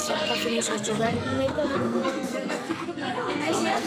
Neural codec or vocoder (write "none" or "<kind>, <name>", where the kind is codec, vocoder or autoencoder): codec, SNAC